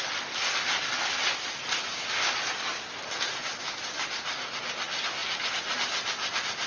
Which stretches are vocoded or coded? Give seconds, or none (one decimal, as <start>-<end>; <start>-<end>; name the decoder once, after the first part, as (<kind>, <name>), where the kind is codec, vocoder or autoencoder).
none